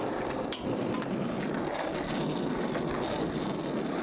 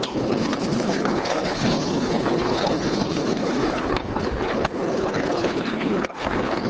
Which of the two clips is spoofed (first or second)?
second